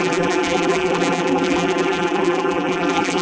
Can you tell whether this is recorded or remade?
remade